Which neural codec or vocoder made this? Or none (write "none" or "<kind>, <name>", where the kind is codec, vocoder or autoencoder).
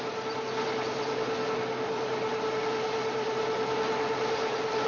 none